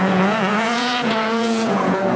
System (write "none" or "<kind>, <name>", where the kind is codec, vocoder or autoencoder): vocoder, Vocos